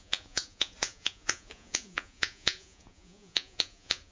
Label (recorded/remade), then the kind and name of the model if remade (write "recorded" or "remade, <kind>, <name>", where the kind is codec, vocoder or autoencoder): remade, vocoder, Vocos